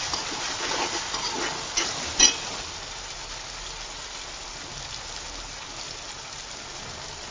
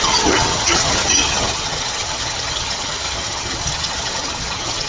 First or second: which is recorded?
first